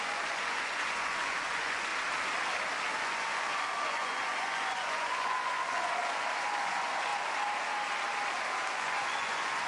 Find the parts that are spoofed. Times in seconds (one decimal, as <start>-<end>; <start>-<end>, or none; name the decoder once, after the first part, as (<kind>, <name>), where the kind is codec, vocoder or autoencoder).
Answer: 0.0-1.9 (vocoder, Vocos); 3.0-7.1; 8.7-9.7